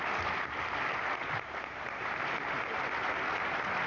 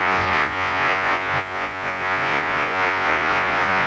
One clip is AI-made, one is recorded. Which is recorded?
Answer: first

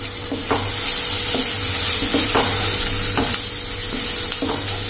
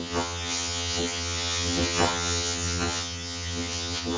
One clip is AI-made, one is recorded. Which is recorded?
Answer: first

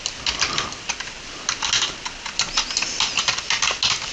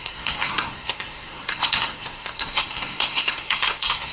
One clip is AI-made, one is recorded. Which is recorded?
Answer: first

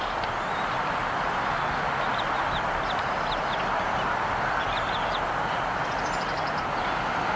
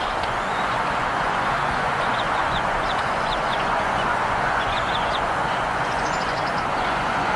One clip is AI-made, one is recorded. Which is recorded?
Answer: first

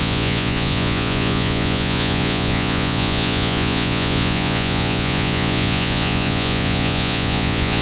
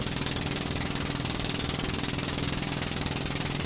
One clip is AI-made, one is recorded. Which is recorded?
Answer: second